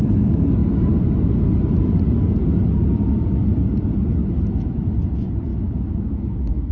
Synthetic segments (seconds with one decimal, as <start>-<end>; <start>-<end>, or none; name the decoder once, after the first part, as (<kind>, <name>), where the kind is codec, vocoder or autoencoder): 4.2-4.8 (autoencoder, DAC-VAE); 5.5-6.7